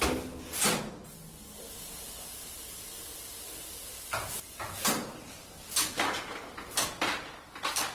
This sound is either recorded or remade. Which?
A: recorded